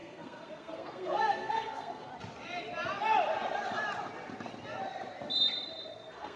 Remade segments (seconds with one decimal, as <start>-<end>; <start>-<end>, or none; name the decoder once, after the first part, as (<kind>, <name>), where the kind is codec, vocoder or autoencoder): 0.0-2.1 (codec, SNAC); 5.9-6.4